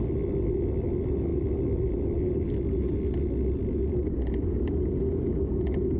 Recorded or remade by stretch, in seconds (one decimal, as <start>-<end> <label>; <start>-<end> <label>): 0.0-6.0 recorded

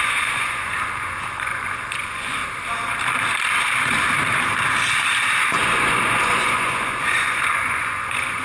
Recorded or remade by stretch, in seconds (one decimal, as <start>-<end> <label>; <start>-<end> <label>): 0.0-2.4 remade; 2.4-5.4 recorded; 5.4-8.4 remade

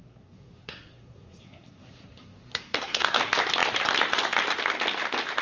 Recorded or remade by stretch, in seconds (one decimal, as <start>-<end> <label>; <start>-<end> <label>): 0.0-3.2 remade; 3.2-5.4 recorded

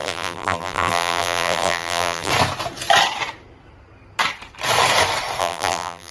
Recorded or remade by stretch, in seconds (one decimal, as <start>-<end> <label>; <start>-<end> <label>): 0.0-2.3 remade; 2.3-5.4 recorded; 5.4-6.1 remade

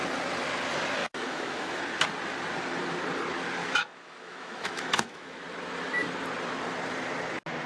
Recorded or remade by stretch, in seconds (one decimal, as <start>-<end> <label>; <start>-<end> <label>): 0.0-1.0 recorded; 1.0-1.8 remade; 1.8-3.6 recorded; 3.6-5.4 remade; 5.4-7.7 recorded

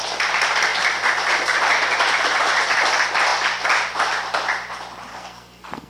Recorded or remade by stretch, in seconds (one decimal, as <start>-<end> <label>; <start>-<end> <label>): 0.0-5.1 recorded; 5.1-5.9 remade